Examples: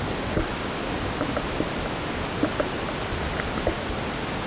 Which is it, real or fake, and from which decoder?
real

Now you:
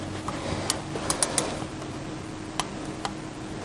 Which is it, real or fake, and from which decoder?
real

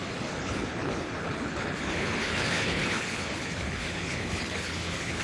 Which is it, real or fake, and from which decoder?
fake, codec, HILCodec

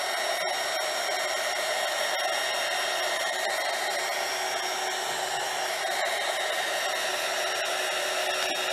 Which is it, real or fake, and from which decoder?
real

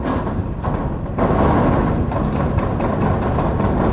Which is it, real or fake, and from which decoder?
real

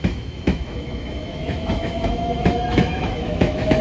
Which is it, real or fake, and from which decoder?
fake, autoencoder, DAC-VAE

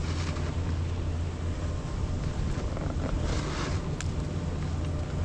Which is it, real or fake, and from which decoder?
real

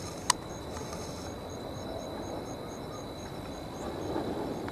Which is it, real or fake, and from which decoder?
real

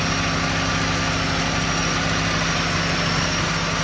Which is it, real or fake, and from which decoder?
real